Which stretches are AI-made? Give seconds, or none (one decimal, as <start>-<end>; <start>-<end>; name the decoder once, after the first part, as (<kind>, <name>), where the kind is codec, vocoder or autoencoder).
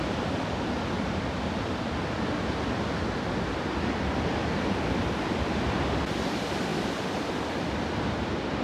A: none